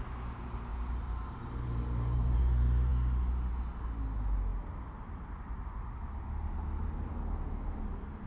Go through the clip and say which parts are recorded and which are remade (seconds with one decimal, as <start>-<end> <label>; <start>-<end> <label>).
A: 0.0-0.7 recorded; 0.7-2.4 remade; 2.4-8.3 recorded